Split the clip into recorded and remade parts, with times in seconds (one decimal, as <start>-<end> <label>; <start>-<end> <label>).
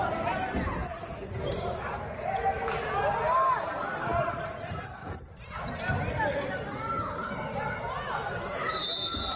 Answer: 0.0-0.8 recorded; 0.8-2.3 remade; 2.3-4.1 recorded; 4.1-6.8 remade; 6.8-9.4 recorded